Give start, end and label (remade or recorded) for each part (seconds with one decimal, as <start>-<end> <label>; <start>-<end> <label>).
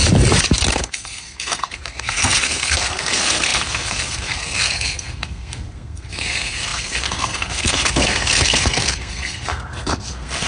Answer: 0.0-0.7 recorded; 0.7-10.5 remade